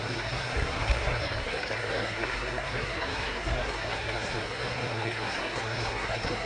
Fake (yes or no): yes